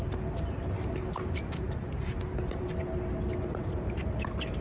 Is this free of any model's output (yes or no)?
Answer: yes